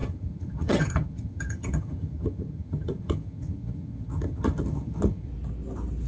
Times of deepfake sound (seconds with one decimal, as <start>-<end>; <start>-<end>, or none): 0.0-5.3